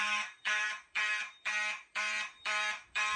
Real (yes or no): no